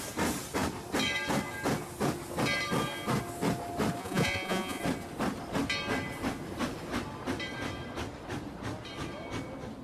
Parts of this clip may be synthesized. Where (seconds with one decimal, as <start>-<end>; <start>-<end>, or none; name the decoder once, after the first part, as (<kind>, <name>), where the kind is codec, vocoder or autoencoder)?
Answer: 4.0-4.8 (vocoder, Vocos)